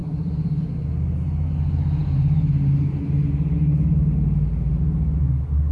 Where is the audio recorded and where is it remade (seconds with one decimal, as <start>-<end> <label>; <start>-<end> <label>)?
0.0-0.6 remade; 0.6-5.7 recorded